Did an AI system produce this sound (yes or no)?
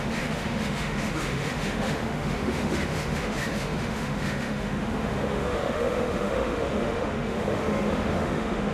yes